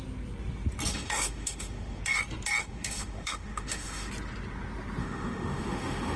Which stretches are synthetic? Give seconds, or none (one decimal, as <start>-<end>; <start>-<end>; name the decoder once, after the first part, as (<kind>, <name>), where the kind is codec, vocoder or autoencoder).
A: 0.9-2.0 (autoencoder, DAC-VAE); 2.6-4.1; 5.0-6.2